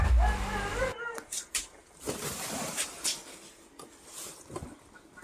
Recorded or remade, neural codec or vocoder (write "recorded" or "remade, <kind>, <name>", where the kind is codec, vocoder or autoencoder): recorded